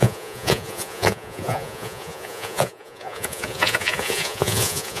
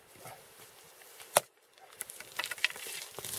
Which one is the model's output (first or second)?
first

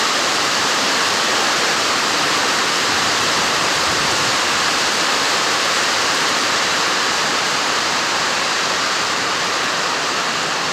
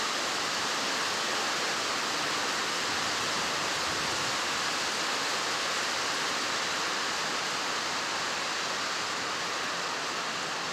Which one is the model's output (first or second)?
first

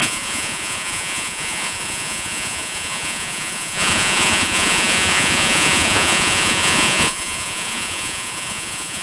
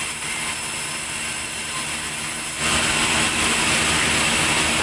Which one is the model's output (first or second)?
first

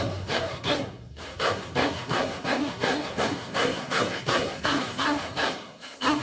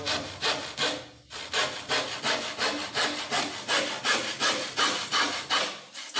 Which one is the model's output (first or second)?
first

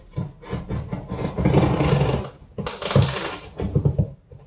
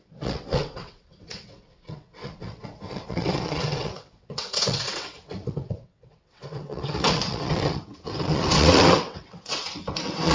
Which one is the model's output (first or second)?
second